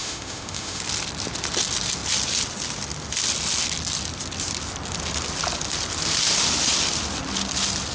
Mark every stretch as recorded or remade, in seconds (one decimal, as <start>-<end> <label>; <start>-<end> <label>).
0.0-0.8 remade; 0.8-7.9 recorded